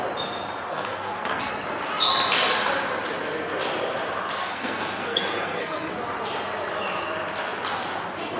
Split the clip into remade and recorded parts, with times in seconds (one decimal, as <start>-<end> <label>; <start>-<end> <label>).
0.0-0.7 recorded; 0.7-1.5 remade; 1.5-4.4 recorded; 4.4-5.9 remade; 5.9-8.4 recorded